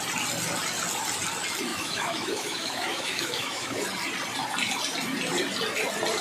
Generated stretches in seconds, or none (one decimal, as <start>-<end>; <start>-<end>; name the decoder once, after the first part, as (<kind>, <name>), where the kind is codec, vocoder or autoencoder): 1.7-3.8 (autoencoder, DAC-VAE)